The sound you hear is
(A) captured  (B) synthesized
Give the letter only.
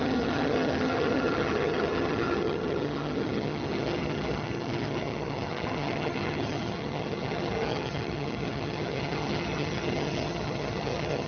B